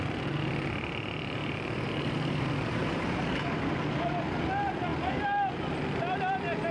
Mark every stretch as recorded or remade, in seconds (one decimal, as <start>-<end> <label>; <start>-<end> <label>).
0.0-1.4 recorded; 1.4-2.1 remade; 2.1-2.8 recorded; 2.8-4.1 remade; 4.1-6.7 recorded